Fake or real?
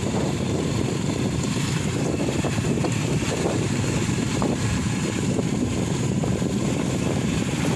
fake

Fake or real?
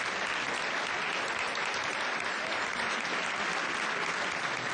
real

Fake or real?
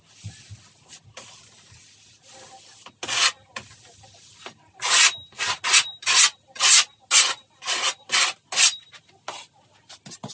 real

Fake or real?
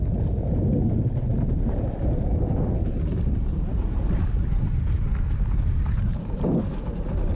real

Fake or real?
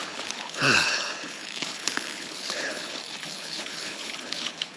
fake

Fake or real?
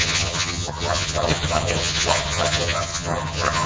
fake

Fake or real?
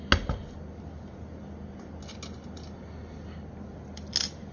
real